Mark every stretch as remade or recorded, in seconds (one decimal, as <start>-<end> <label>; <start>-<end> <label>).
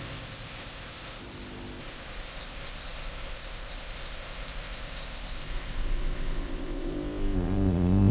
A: 0.0-1.2 remade; 1.2-1.8 recorded; 1.8-8.1 remade